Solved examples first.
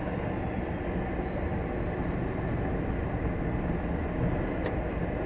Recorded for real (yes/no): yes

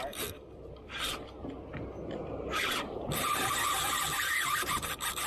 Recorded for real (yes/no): no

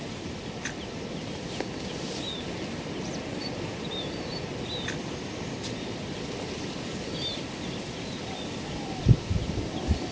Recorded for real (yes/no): yes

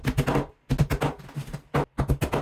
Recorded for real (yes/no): yes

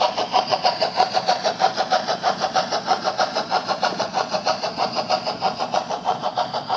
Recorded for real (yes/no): no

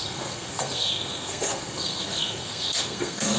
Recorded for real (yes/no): no